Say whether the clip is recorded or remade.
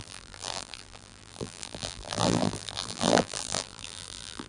remade